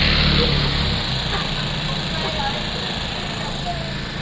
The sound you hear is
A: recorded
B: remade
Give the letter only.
A